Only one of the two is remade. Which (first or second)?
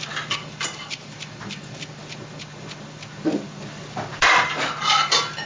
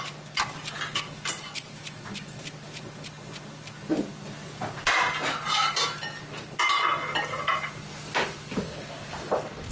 first